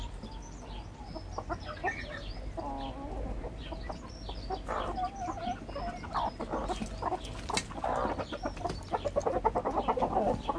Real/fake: real